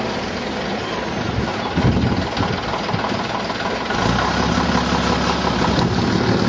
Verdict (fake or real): real